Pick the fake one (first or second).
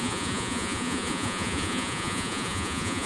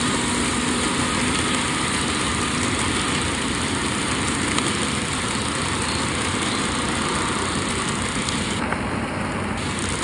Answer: first